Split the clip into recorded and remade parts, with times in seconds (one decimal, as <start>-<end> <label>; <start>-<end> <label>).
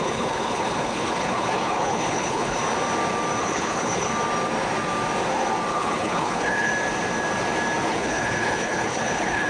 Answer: 0.0-2.6 remade; 2.6-3.4 recorded; 3.4-4.1 remade; 4.1-5.7 recorded; 5.7-6.7 remade; 6.7-7.9 recorded; 7.9-9.5 remade